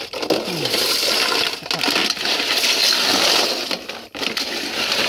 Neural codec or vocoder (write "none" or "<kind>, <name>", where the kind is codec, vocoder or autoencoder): none